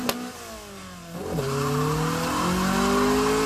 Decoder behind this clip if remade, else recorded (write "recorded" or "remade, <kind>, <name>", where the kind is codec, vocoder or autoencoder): recorded